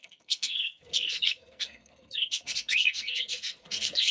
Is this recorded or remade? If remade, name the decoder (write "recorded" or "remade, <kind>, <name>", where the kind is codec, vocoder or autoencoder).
remade, codec, SNAC